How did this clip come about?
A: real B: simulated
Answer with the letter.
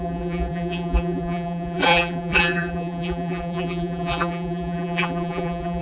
B